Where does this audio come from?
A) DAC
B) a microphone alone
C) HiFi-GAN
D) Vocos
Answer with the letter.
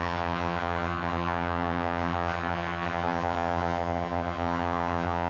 C